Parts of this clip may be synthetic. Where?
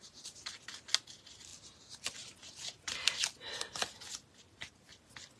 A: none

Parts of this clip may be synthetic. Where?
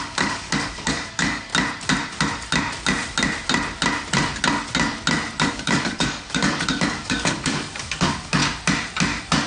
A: 0.0-1.5 (codec, DAC); 5.5-8.4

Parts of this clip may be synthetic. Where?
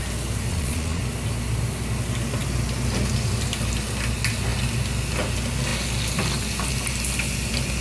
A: 0.5-1.0 (vocoder, Vocos)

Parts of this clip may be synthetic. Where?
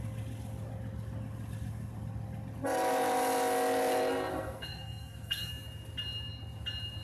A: 4.3-5.5 (codec, SNAC)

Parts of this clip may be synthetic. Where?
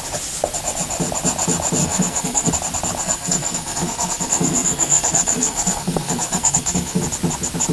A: 1.8-2.5 (codec, SNAC); 3.0-7.0